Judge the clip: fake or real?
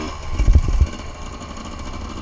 real